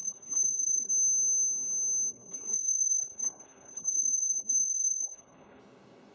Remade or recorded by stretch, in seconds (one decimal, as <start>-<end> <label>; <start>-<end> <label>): 0.0-0.9 remade; 0.9-2.1 recorded; 2.1-5.6 remade; 5.6-6.1 recorded